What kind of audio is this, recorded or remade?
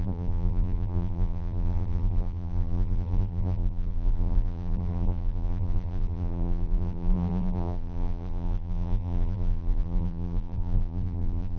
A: remade